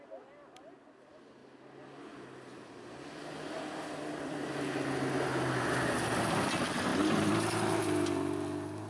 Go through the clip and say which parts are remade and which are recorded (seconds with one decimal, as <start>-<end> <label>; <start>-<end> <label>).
0.0-8.9 recorded